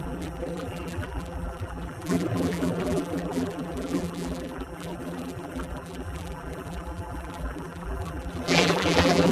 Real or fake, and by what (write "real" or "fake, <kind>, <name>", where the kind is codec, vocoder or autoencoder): fake, vocoder, BigVGAN v2